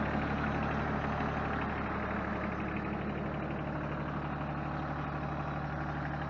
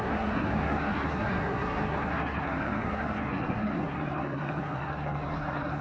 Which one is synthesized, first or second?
second